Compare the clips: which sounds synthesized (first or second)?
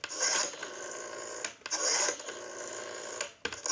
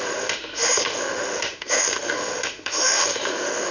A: second